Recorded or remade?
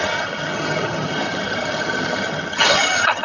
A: remade